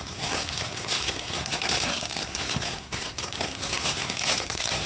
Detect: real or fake fake